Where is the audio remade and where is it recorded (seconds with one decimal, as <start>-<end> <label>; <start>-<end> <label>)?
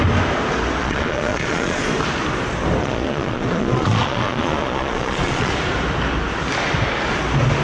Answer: 0.0-0.8 recorded; 0.8-1.8 remade; 1.8-2.8 recorded; 2.8-5.5 remade; 5.5-7.6 recorded